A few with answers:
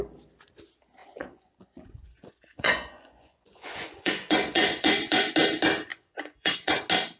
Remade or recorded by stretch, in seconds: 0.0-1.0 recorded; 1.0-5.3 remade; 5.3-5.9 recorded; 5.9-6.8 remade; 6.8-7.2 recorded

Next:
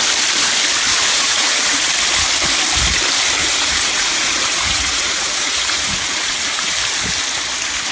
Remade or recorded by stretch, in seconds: 0.0-0.9 recorded; 0.9-1.9 remade; 1.9-3.4 recorded; 3.4-6.7 remade; 6.7-7.9 recorded

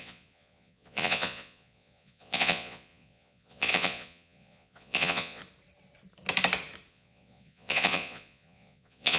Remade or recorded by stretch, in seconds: 0.0-5.4 remade; 5.4-6.9 recorded; 6.9-9.2 remade

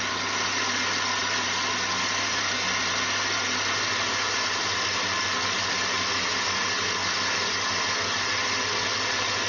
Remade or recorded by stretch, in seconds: 0.0-9.5 recorded

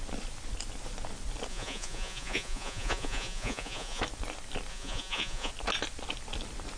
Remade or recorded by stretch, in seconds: 0.0-1.5 recorded; 1.5-4.0 remade; 4.0-4.7 recorded; 4.7-5.5 remade; 5.5-6.8 recorded

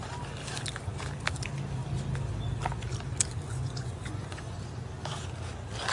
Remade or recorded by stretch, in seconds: 0.0-3.5 recorded; 3.5-4.6 remade; 4.6-5.9 recorded

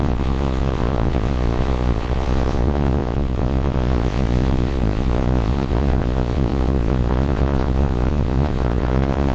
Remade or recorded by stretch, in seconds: 0.0-9.3 remade